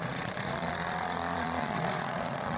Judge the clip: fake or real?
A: fake